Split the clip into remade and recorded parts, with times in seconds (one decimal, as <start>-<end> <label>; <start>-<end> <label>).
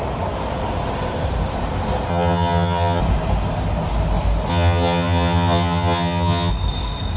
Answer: 0.0-2.1 recorded; 2.1-3.0 remade; 3.0-4.5 recorded; 4.5-6.5 remade; 6.5-7.2 recorded